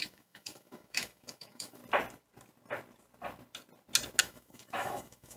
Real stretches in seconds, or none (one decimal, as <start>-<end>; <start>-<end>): 1.8-4.2